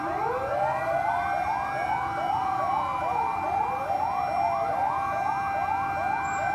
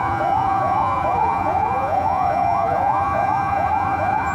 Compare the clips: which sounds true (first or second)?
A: first